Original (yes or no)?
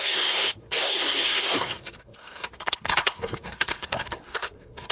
no